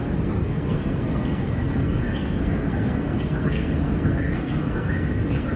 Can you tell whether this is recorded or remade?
remade